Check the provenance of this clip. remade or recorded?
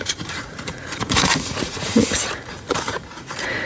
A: remade